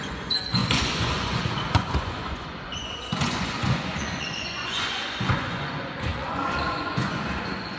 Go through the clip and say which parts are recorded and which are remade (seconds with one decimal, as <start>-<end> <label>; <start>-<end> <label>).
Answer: 0.0-7.8 remade